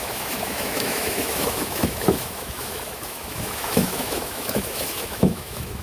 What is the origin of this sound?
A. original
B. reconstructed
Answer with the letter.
B